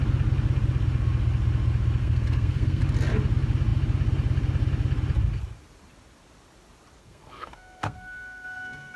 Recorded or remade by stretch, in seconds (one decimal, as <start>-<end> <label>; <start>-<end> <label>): 0.0-2.0 recorded; 2.0-2.8 remade; 2.8-7.0 recorded; 7.0-9.0 remade